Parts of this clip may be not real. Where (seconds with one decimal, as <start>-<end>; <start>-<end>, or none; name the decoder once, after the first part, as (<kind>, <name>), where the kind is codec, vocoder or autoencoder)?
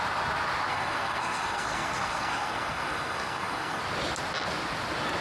0.7-3.8 (codec, SNAC)